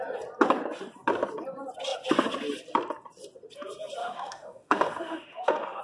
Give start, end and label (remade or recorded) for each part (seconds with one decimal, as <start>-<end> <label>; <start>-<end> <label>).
0.0-4.0 recorded; 4.0-5.8 remade